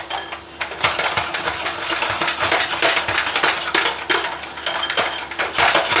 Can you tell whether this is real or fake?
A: real